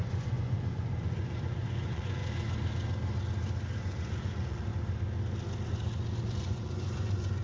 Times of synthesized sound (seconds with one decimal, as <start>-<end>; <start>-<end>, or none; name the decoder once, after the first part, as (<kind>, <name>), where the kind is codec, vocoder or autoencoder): 0.0-2.2 (vocoder, Vocos); 3.8-4.7; 6.2-7.4